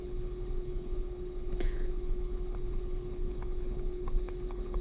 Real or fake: fake